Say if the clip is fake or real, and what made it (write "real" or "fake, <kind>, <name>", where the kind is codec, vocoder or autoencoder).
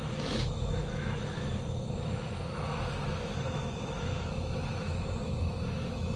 fake, autoencoder, DAC-VAE